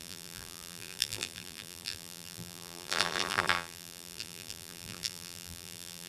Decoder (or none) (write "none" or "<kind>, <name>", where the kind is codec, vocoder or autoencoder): vocoder, BigVGAN v2